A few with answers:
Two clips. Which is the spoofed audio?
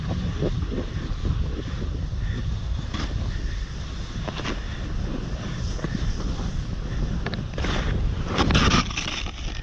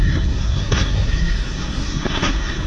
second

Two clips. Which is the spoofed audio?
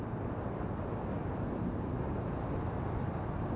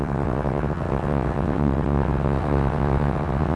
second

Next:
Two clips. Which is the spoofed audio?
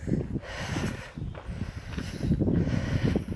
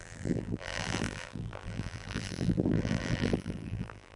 second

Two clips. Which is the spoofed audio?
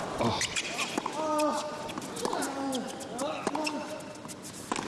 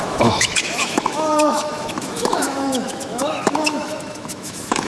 second